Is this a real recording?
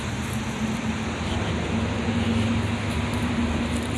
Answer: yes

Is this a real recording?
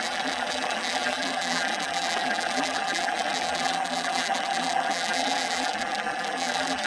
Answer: no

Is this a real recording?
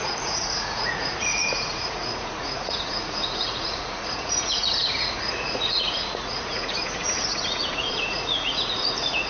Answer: no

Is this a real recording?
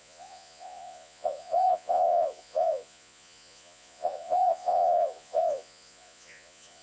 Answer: no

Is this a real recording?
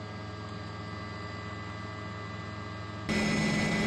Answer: yes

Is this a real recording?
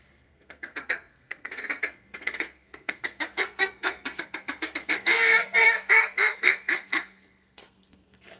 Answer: no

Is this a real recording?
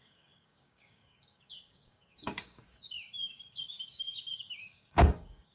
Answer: no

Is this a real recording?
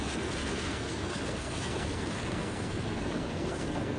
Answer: no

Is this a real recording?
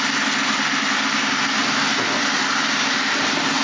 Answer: yes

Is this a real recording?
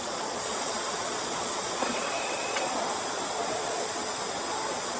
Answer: no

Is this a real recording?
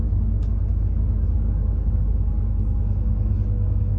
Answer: no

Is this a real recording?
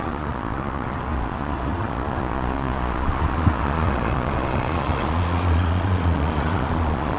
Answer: no